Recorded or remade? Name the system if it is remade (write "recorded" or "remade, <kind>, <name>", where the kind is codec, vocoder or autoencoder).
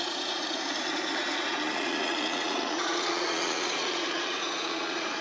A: remade, vocoder, Vocos